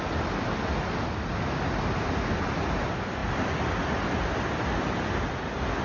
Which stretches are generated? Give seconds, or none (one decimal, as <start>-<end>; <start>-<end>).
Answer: none